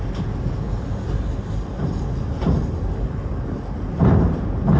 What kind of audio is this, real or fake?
real